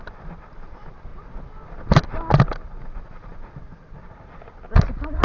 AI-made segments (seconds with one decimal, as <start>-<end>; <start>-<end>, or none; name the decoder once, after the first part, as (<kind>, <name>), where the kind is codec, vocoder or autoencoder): none